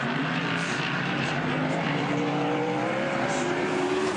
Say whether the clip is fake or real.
fake